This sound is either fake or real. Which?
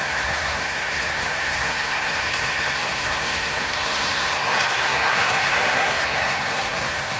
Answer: fake